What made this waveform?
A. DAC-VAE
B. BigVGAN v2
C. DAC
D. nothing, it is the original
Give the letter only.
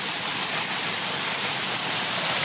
B